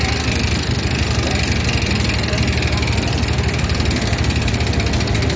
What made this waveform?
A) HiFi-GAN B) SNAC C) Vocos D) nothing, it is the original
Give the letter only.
D